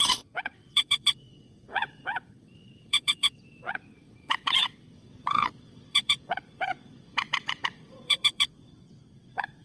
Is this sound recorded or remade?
remade